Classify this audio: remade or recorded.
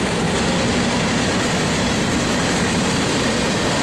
recorded